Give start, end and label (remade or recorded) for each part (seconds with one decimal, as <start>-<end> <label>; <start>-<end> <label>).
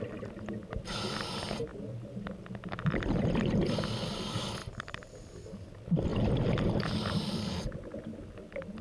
0.0-4.6 recorded; 4.6-5.1 remade; 5.1-6.1 recorded; 6.1-7.2 remade; 7.2-8.8 recorded